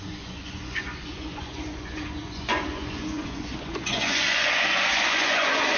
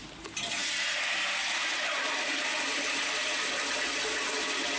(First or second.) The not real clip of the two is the first